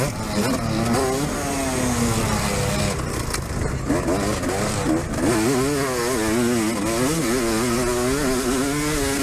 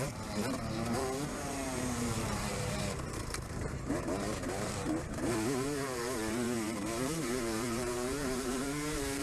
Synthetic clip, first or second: second